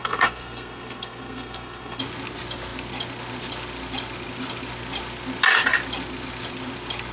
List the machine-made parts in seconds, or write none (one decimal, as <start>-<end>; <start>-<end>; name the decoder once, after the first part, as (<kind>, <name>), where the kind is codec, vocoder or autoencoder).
0.0-2.0 (codec, SNAC)